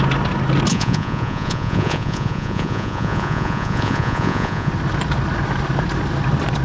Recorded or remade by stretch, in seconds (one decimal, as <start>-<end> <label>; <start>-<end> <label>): 0.0-0.7 recorded; 0.7-4.7 remade; 4.7-6.6 recorded